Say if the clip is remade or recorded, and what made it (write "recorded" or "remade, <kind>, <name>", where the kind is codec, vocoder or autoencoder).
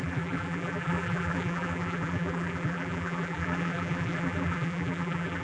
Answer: remade, vocoder, BigVGAN v2